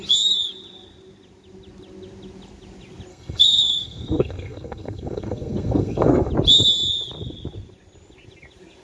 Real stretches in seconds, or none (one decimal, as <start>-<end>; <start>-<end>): 0.0-3.1; 6.3-8.8